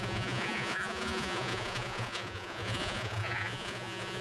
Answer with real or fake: fake